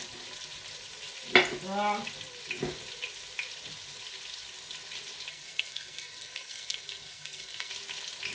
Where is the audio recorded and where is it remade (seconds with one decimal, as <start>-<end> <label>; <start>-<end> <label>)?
0.0-5.3 recorded; 5.3-7.7 remade; 7.7-8.3 recorded